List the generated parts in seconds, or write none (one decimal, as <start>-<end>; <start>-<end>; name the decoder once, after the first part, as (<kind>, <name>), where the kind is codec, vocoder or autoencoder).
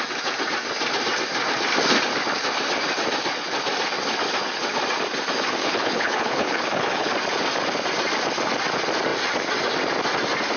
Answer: 5.6-7.1 (codec, HILCodec)